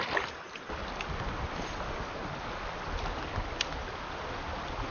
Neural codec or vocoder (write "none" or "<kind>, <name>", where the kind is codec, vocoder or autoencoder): none